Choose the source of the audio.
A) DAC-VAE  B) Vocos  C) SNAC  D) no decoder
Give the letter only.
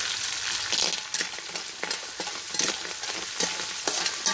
D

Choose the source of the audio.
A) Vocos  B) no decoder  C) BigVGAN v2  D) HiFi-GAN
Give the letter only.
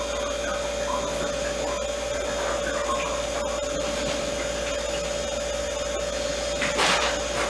B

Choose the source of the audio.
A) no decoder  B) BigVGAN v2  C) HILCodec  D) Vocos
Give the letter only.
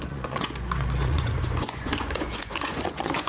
D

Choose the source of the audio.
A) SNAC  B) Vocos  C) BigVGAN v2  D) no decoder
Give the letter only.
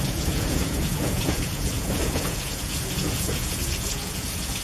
B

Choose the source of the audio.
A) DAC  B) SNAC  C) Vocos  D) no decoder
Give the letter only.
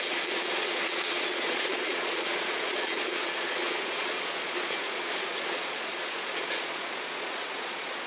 C